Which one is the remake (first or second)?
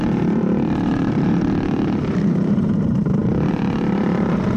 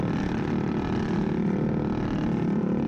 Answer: first